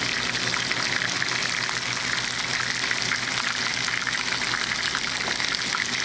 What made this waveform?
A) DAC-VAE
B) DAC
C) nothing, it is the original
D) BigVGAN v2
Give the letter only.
C